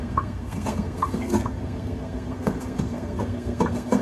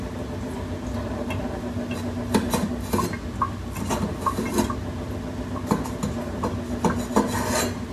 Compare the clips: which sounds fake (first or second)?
first